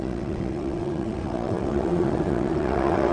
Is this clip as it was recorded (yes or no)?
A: no